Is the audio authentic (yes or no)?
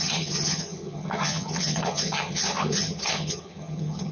no